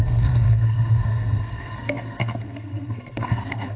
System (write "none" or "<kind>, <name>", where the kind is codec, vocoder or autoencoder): codec, SNAC